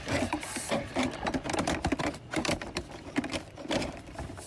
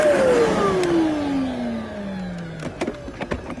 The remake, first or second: first